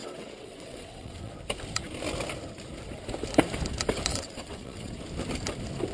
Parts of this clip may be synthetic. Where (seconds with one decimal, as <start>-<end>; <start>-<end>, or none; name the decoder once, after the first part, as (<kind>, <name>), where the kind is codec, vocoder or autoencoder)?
0.0-1.3 (vocoder, WaveNeXt); 4.1-4.9